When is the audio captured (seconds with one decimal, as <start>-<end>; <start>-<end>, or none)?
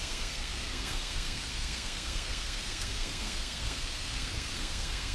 none